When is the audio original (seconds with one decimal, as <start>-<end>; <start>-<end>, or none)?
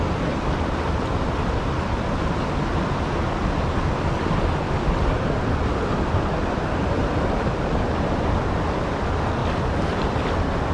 0.0-10.7